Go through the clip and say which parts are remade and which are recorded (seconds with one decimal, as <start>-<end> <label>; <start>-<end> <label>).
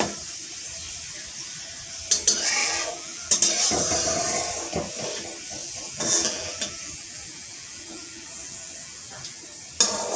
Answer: 0.0-2.6 recorded; 2.6-3.3 remade; 3.3-5.6 recorded; 5.6-9.4 remade; 9.4-10.2 recorded